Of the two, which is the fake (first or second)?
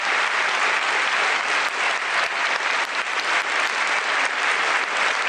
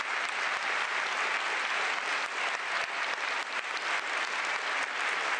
first